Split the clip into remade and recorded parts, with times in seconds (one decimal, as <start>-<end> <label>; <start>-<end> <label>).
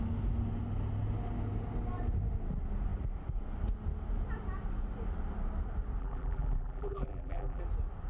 0.0-6.0 recorded; 6.0-7.6 remade; 7.6-8.1 recorded